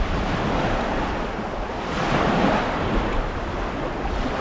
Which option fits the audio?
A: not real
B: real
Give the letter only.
B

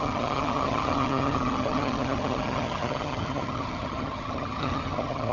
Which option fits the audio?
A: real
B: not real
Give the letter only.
B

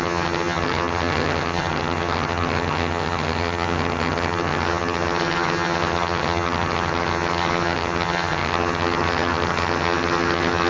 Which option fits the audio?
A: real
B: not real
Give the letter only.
B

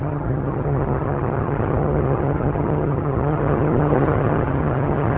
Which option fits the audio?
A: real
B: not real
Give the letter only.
B